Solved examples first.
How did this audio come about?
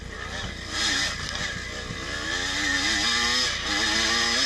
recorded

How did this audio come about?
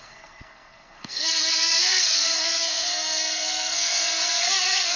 remade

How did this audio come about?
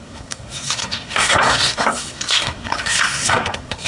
remade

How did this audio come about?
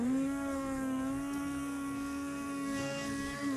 remade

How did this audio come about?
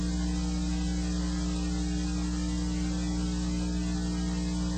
recorded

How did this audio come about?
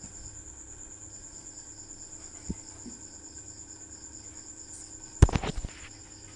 recorded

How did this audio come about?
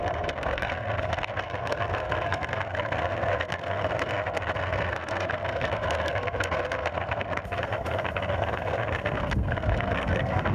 remade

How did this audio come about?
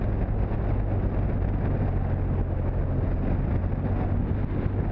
recorded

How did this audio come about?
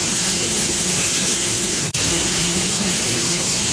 remade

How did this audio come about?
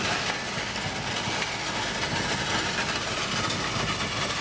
recorded